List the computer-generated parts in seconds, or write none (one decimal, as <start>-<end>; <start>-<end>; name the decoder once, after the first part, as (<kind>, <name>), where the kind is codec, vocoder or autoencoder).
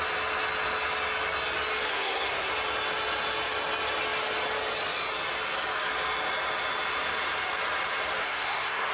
1.9-2.5 (codec, SNAC); 8.2-8.9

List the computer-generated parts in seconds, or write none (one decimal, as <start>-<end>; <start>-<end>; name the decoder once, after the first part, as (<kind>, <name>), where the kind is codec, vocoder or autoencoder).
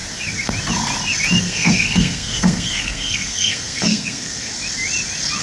1.4-4.5 (codec, SNAC)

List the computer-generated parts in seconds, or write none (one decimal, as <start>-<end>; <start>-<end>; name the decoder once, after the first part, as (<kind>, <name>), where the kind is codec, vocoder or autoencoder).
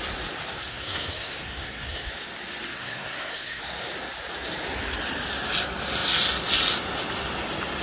0.7-2.1 (codec, SNAC); 2.7-3.6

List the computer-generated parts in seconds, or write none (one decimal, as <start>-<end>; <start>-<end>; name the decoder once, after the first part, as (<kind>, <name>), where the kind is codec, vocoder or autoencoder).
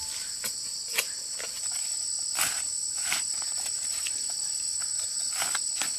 none